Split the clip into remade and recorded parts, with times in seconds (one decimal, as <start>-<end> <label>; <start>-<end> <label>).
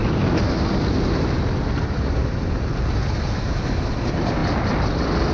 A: 0.0-5.3 recorded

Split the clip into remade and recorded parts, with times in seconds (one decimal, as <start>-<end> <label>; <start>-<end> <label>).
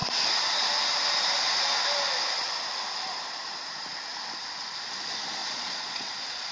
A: 0.0-5.4 recorded; 5.4-6.5 remade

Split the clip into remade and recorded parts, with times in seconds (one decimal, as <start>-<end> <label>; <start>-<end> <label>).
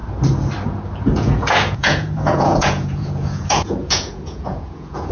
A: 0.0-1.0 recorded; 1.0-5.1 remade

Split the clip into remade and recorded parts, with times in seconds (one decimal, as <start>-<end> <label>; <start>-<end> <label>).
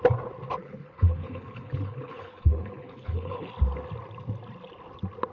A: 0.0-0.6 recorded; 0.6-3.5 remade; 3.5-5.3 recorded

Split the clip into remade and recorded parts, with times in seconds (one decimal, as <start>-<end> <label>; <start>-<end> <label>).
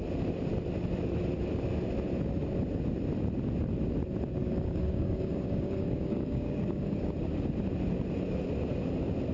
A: 0.0-4.4 recorded; 4.4-7.1 remade; 7.1-9.3 recorded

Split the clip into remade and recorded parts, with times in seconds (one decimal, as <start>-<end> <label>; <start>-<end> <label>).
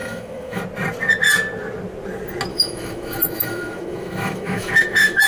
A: 0.0-0.6 remade; 0.6-2.5 recorded; 2.5-5.3 remade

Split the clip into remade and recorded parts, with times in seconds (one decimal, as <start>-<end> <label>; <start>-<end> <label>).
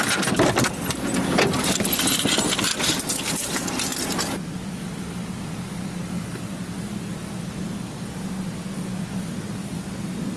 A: 0.0-10.4 recorded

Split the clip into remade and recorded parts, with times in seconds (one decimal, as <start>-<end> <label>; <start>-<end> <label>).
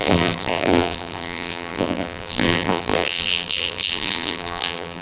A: 0.0-5.0 remade